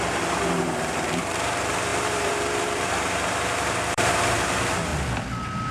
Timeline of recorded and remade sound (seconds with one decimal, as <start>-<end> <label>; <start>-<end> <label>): 0.0-4.9 remade; 4.9-5.7 recorded